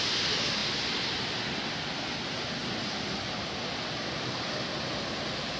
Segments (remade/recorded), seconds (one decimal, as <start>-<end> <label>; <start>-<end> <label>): 0.0-5.6 recorded